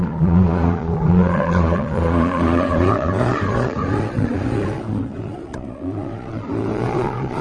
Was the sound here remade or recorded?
remade